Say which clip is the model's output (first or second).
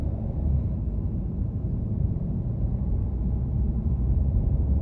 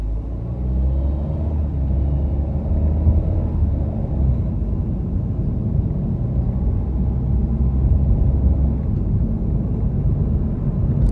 first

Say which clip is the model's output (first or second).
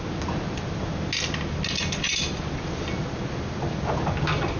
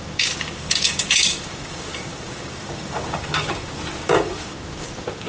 second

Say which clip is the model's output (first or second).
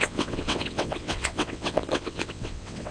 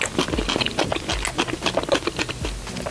first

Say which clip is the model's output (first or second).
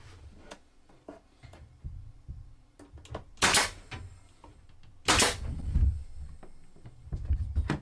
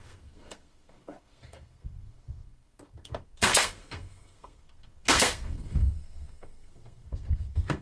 second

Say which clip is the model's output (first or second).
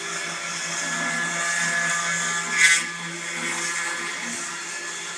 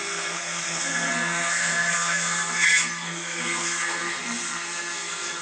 second